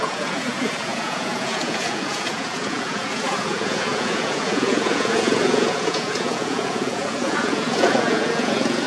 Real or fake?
fake